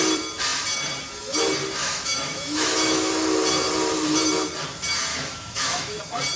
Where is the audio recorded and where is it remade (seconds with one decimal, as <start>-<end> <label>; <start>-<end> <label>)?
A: 0.0-1.8 recorded; 1.8-3.1 remade; 3.1-5.1 recorded; 5.1-6.0 remade; 6.0-6.4 recorded